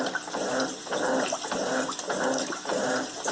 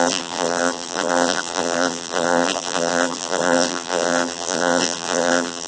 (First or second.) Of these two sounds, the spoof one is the second